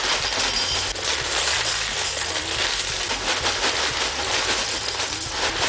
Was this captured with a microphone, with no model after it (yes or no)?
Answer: yes